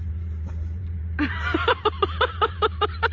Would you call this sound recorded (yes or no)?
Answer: no